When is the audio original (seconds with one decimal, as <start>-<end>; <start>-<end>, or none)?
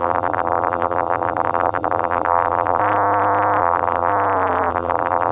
2.8-3.6; 4.1-4.7